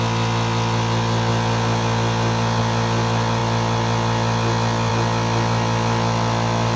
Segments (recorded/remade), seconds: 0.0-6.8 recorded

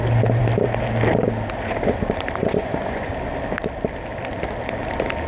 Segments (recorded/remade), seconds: 0.0-2.4 recorded; 2.4-3.1 remade; 3.1-5.3 recorded

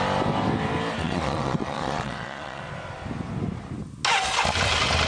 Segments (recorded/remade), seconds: 0.0-1.0 recorded; 1.0-2.6 remade; 2.6-5.1 recorded

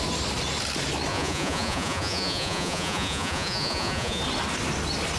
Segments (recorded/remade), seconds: 0.0-1.1 recorded; 1.1-4.2 remade; 4.2-5.2 recorded

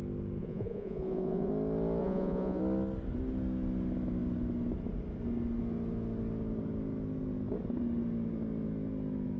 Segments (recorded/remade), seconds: 0.0-0.4 recorded; 0.4-1.5 remade; 1.5-2.0 recorded; 2.0-2.6 remade; 2.6-9.4 recorded

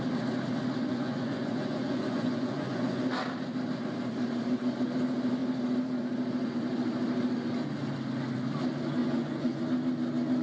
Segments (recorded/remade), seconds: 0.0-0.9 recorded; 0.9-3.0 remade; 3.0-9.0 recorded; 9.0-9.6 remade; 9.6-10.4 recorded